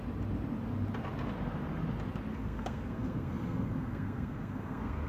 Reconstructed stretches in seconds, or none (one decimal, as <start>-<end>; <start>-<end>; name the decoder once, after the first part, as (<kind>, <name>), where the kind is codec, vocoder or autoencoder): 2.3-5.1 (codec, SNAC)